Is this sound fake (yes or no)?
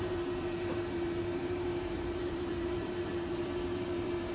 yes